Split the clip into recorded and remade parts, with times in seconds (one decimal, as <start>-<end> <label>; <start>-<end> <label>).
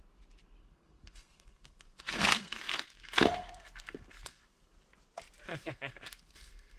0.0-0.6 recorded; 0.6-4.7 remade; 4.7-5.5 recorded; 5.5-6.8 remade